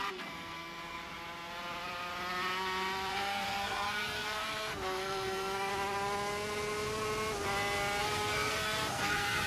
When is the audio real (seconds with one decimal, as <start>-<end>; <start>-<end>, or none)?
1.0-3.1; 5.7-8.0